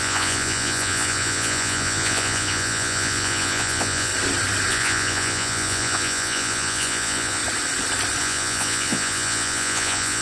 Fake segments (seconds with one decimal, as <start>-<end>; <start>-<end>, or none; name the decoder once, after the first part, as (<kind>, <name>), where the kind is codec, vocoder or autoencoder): 0.0-4.1 (vocoder, Vocos); 4.7-7.4; 8.2-10.2